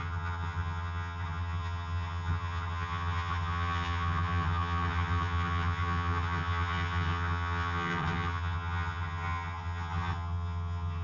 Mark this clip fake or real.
fake